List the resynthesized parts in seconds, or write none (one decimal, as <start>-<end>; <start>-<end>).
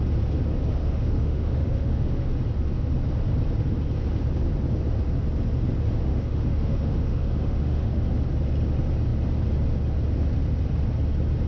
0.8-2.3; 6.1-8.0